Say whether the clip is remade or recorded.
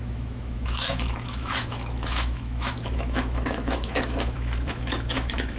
remade